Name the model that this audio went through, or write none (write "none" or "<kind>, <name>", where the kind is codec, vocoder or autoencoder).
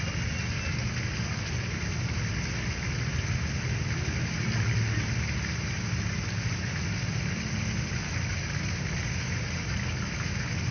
none